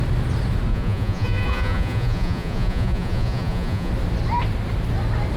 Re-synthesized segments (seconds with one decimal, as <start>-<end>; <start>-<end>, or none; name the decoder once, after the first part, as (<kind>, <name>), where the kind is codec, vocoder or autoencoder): 0.7-3.9 (vocoder, Vocos)

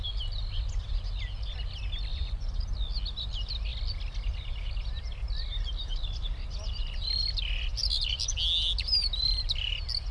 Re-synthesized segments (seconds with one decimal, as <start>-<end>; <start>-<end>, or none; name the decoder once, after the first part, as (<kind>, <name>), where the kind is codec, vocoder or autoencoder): 2.1-2.6 (vocoder, Vocos)

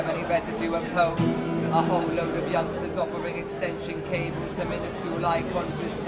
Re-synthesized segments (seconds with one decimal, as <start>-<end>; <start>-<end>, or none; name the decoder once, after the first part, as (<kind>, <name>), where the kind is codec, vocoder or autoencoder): none

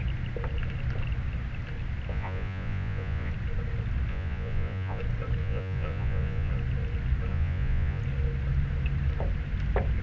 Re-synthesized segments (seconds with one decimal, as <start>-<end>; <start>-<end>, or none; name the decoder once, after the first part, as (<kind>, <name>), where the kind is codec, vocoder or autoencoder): 2.1-3.3 (vocoder, Vocos); 4.1-5.0; 5.4-6.5; 7.3-8.0